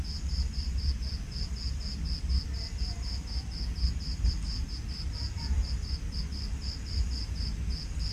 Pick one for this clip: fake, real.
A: real